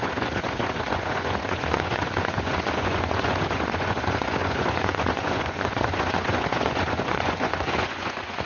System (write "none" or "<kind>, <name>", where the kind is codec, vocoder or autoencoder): vocoder, Vocos